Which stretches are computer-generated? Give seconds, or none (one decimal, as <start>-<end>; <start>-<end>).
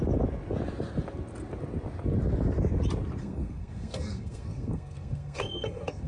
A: 3.2-6.1